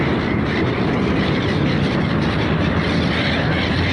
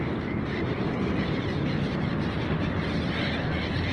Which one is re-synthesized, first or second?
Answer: first